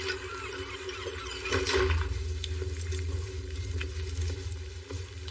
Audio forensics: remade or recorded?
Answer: recorded